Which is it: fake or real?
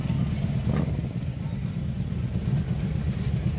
real